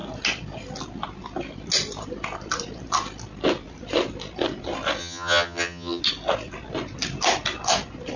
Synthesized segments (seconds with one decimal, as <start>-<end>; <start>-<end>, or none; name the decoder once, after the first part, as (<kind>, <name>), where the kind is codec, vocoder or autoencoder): 5.0-6.0 (vocoder, HiFi-GAN)